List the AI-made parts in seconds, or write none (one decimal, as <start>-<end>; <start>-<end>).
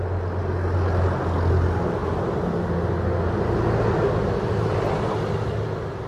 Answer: none